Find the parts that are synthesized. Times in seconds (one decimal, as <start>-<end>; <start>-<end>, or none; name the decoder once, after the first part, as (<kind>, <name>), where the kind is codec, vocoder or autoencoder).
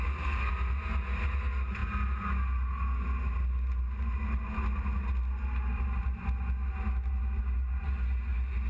0.0-0.5 (codec, SNAC)